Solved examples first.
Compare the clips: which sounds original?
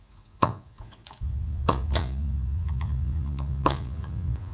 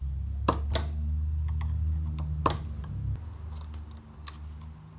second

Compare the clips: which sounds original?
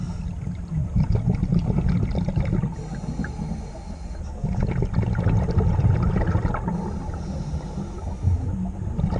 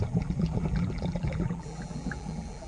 first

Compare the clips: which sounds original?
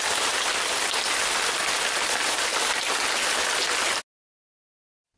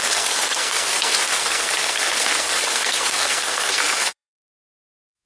first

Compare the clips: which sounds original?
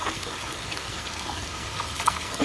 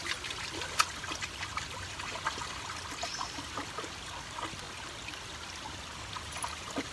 second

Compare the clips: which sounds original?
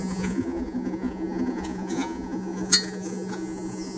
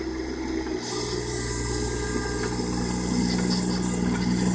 second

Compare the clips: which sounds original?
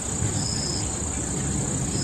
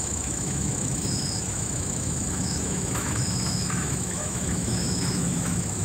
first